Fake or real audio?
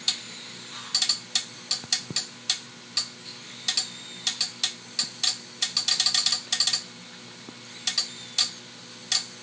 real